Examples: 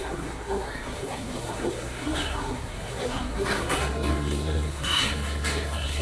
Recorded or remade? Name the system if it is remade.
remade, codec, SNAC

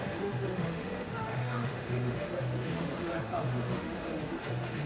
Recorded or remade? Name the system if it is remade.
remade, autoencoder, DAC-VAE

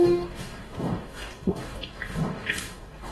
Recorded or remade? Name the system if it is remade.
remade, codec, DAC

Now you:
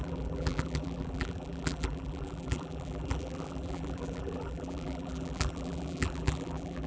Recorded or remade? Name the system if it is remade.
remade, vocoder, BigVGAN v2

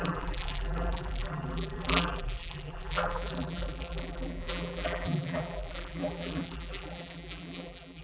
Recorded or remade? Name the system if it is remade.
remade, vocoder, BigVGAN v2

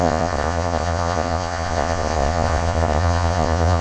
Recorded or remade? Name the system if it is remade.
remade, vocoder, Vocos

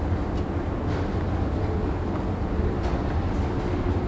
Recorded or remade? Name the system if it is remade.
recorded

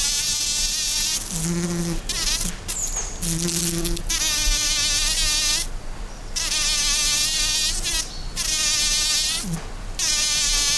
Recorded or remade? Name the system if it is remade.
recorded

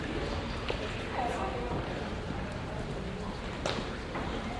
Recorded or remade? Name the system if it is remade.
recorded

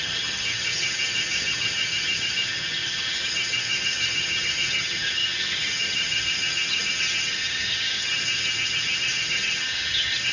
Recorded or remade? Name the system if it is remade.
remade, vocoder, HiFi-GAN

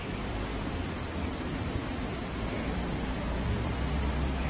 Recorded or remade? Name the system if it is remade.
remade, vocoder, BigVGAN v2